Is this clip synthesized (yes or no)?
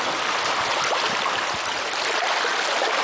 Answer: no